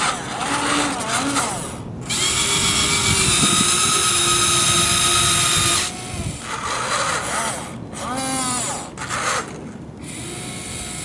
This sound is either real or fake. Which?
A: real